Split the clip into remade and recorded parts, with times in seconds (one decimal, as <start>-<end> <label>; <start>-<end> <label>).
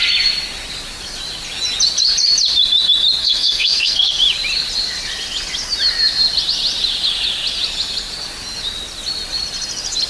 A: 0.0-3.2 recorded; 3.2-4.2 remade; 4.2-10.1 recorded